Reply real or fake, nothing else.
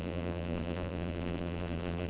fake